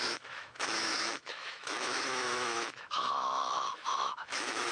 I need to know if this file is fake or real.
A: fake